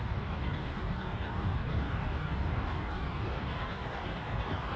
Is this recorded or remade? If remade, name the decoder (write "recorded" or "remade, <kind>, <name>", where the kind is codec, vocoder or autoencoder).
remade, codec, DAC